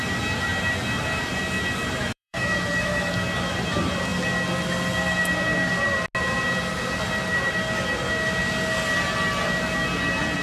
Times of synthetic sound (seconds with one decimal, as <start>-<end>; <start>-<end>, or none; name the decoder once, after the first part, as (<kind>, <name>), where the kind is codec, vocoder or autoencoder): 2.0-3.1 (autoencoder, DAC-VAE)